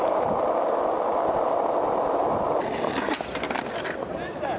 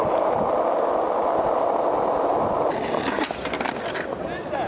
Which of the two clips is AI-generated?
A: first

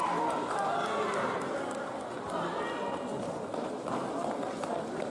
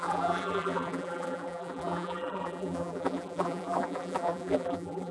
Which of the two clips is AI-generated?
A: second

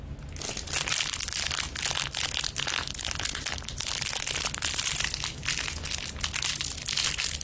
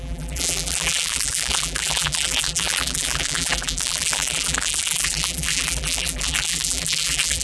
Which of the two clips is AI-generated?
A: second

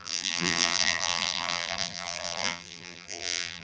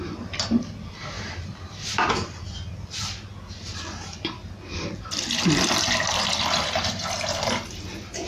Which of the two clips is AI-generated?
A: first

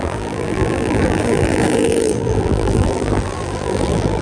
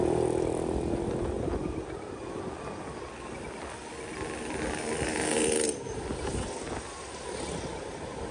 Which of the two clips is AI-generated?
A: first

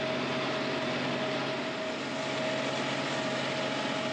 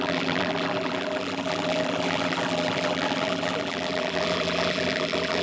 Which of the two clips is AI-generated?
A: second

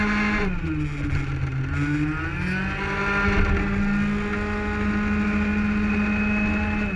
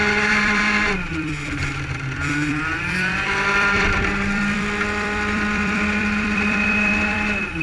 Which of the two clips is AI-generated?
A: second